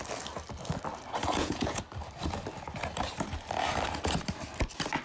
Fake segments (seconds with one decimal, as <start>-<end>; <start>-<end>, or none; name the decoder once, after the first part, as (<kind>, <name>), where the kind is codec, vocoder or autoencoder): 1.2-1.8 (vocoder, Vocos)